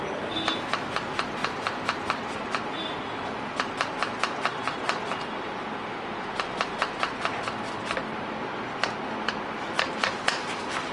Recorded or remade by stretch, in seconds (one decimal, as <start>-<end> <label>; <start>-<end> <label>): 0.0-10.9 recorded